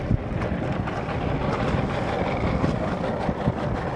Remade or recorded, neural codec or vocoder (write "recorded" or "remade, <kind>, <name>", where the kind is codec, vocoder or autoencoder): recorded